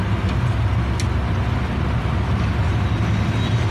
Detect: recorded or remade recorded